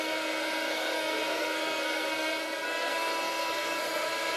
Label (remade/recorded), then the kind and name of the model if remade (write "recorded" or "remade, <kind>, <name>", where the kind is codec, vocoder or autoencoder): remade, codec, SNAC